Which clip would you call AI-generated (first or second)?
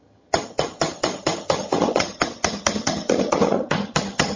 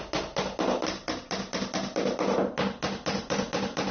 first